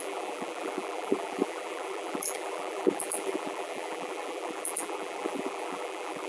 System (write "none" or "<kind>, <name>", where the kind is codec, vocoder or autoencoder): vocoder, BigVGAN v2